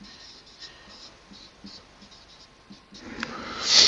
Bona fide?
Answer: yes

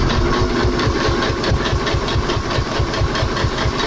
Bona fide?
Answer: yes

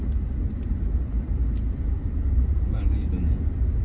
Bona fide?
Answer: yes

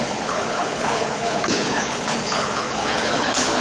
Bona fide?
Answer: no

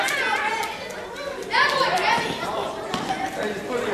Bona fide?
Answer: no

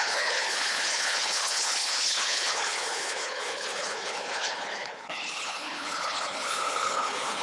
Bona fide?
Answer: no